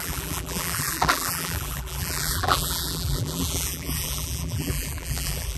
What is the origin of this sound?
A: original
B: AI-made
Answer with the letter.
B